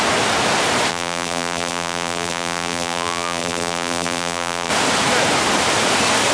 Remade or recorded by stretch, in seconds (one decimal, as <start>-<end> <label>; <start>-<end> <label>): 0.0-0.9 recorded; 0.9-4.7 remade; 4.7-6.3 recorded